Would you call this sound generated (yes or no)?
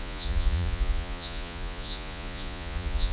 yes